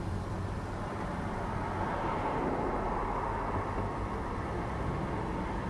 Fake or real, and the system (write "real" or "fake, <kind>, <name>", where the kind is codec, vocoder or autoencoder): real